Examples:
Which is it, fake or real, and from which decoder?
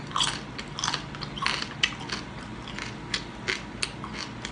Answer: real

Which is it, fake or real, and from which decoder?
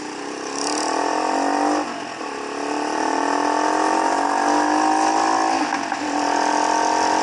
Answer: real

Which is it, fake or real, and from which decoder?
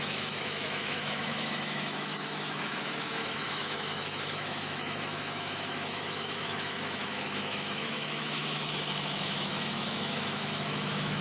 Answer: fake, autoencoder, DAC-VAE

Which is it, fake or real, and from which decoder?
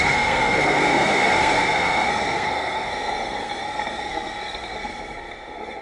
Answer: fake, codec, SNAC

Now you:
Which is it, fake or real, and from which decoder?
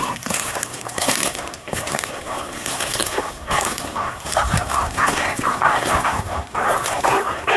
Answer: fake, codec, SNAC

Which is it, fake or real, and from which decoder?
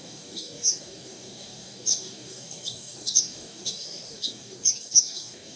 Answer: fake, codec, DAC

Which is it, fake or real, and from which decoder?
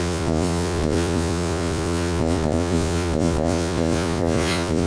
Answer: fake, vocoder, Vocos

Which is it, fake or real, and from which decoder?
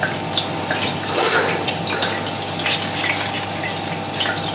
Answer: real